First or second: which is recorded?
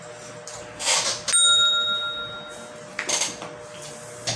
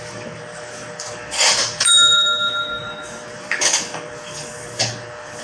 first